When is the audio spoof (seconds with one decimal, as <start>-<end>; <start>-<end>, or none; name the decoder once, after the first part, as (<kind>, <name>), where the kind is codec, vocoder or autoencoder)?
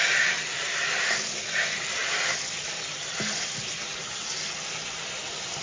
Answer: none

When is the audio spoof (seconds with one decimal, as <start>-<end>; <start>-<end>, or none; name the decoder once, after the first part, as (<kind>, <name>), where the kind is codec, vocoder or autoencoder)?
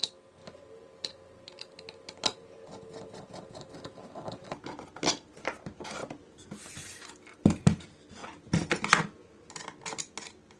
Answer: 6.0-7.0 (vocoder, BigVGAN v2)